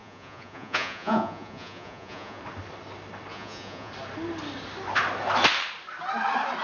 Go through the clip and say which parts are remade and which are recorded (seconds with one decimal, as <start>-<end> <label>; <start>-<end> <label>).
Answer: 0.0-2.4 remade; 2.4-3.3 recorded; 3.3-3.9 remade; 3.9-6.6 recorded